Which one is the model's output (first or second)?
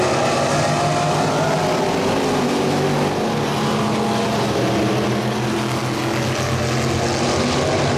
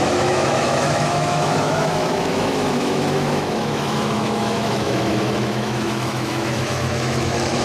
second